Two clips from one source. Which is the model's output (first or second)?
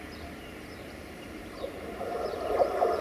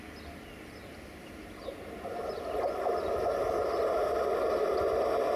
first